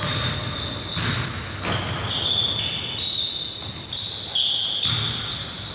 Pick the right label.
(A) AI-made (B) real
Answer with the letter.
B